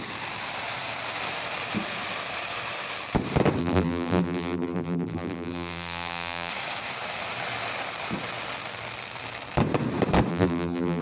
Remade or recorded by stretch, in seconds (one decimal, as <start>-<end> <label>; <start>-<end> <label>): 0.0-3.6 recorded; 3.6-6.5 remade; 6.5-10.3 recorded; 10.3-11.0 remade